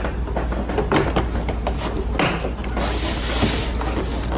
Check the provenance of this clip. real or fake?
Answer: real